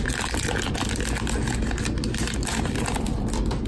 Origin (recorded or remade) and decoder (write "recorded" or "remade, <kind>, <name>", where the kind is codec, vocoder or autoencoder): recorded